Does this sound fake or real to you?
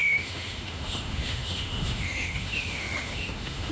fake